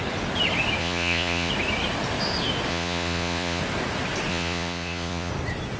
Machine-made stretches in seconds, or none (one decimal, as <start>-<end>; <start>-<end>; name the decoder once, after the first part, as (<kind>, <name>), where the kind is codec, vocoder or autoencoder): 0.8-1.5 (vocoder, Vocos); 2.7-3.6; 4.3-5.3